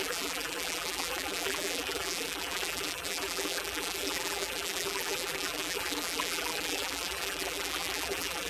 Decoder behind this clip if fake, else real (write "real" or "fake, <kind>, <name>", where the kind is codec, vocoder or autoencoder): fake, vocoder, BigVGAN v2